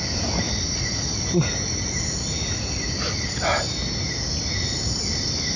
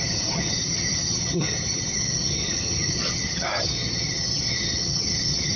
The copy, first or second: second